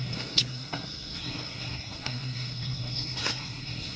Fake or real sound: fake